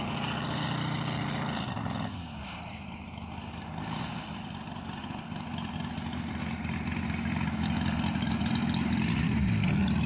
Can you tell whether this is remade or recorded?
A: recorded